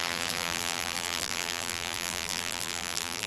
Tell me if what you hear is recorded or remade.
remade